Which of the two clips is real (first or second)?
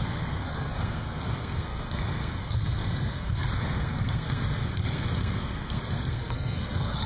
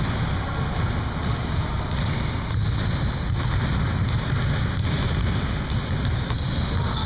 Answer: second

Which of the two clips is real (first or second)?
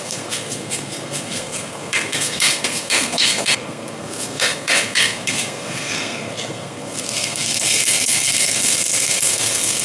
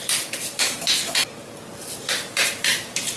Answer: second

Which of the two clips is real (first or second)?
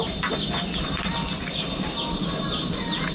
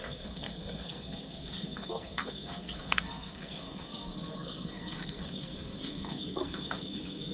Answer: first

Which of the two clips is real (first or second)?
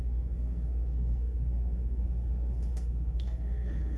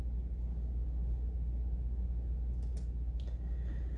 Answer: second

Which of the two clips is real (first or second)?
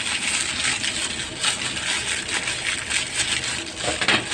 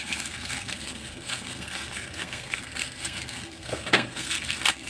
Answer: first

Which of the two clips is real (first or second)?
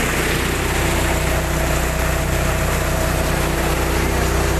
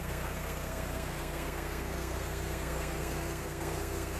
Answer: first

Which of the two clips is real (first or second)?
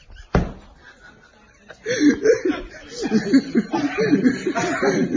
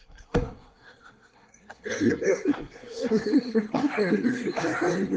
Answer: first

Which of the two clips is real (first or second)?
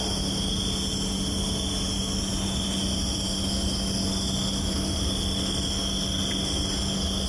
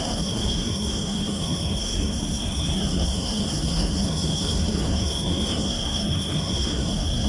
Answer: first